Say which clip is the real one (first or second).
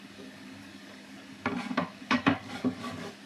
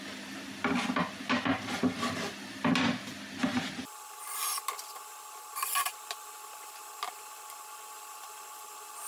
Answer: second